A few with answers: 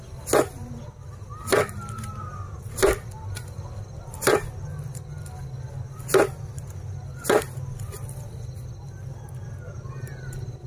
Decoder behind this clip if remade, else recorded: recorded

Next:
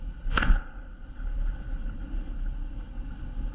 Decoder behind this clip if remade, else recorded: remade, codec, HILCodec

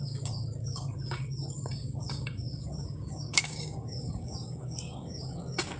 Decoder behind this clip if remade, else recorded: remade, codec, DAC